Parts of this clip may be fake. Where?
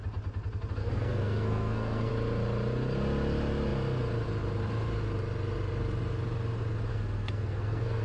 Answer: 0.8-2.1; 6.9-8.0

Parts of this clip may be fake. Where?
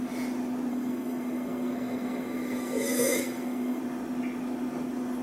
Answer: 0.7-3.8